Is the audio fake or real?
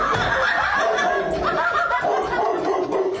real